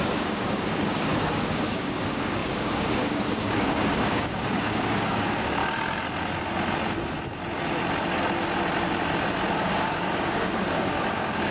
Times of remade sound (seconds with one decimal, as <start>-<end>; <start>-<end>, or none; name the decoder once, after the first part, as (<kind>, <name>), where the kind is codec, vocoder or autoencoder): 0.0-5.6 (codec, DAC); 9.6-11.5